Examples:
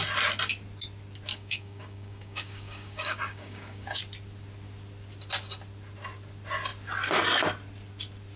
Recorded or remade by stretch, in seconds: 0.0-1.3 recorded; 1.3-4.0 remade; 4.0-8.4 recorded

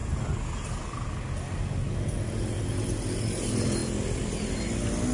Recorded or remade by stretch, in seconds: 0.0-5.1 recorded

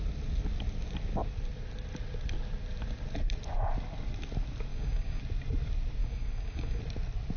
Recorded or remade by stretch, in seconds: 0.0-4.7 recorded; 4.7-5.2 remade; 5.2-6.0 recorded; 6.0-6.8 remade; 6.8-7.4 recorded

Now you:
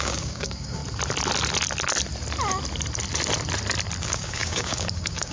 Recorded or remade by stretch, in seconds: 0.0-0.8 remade; 0.8-4.0 recorded; 4.0-5.3 remade

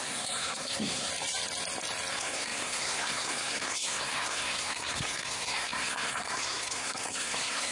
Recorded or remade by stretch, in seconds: 0.0-1.1 remade; 1.1-2.1 recorded; 2.1-7.7 remade